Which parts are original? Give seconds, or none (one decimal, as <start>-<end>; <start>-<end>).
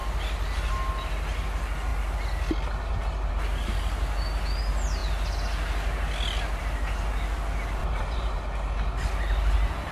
0.0-7.8; 8.4-9.9